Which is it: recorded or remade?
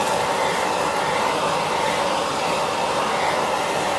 remade